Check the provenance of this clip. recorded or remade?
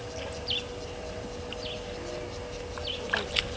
recorded